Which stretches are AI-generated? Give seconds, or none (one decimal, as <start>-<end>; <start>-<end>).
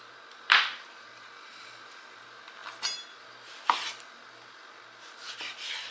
0.0-2.6; 4.8-5.9